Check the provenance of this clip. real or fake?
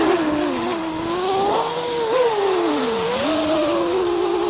real